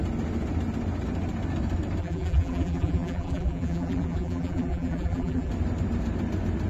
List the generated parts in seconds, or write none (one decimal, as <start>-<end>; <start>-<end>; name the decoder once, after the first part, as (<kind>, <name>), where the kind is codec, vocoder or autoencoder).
2.0-5.5 (vocoder, BigVGAN v2)